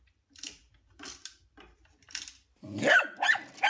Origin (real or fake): fake